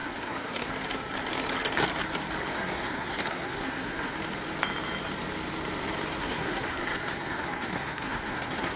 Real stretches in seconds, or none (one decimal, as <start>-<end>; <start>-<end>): 0.7-2.5; 4.1-6.2